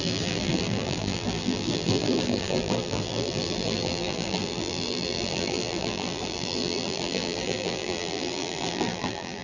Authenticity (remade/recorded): remade